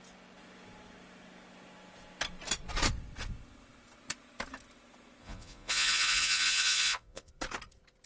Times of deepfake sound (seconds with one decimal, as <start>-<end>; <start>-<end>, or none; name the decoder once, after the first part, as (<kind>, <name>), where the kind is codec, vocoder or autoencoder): 5.2-7.3 (vocoder, Vocos)